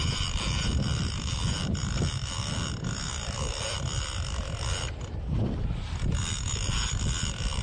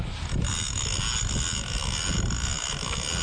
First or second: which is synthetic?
first